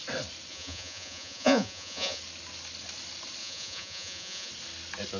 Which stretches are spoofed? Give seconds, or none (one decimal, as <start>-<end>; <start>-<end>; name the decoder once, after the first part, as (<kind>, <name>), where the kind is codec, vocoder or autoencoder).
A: 0.5-2.2 (vocoder, Vocos); 3.4-4.5